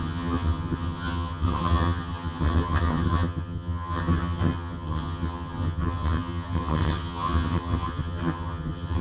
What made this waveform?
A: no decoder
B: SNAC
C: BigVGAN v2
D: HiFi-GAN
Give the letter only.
D